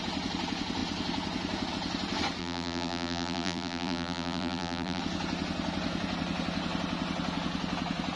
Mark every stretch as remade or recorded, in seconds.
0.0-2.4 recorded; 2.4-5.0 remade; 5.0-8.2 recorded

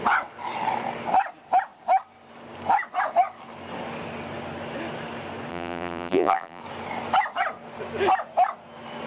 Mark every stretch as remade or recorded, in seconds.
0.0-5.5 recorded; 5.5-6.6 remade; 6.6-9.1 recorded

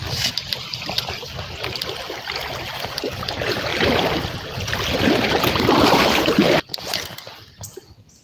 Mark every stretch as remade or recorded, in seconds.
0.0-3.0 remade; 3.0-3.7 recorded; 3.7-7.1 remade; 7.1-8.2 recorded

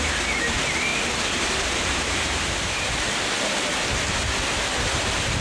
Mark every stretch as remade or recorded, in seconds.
0.0-0.9 recorded; 0.9-3.0 remade; 3.0-5.4 recorded

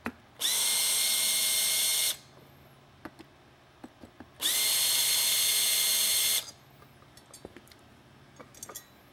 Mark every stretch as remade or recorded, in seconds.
0.0-9.1 recorded

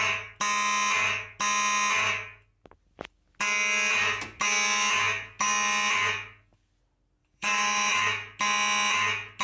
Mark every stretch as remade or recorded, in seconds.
0.0-7.2 recorded; 7.2-7.9 remade; 7.9-9.4 recorded

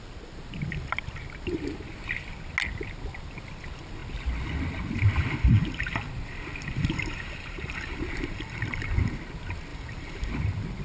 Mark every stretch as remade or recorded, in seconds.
0.0-6.7 recorded; 6.7-9.0 remade; 9.0-9.7 recorded; 9.7-10.3 remade; 10.3-10.8 recorded